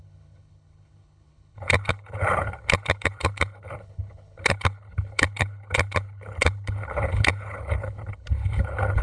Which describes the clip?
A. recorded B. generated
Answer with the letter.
B